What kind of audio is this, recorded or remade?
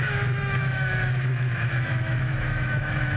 remade